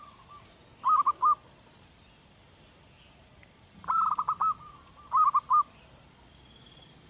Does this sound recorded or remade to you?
recorded